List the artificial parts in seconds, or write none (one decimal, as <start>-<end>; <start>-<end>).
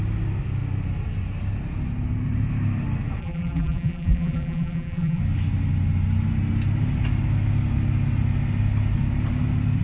3.2-5.2